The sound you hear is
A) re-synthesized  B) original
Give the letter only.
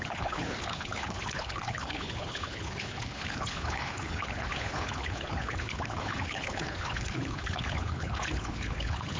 A